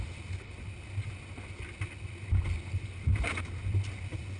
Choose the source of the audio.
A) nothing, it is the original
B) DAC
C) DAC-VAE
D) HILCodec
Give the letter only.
A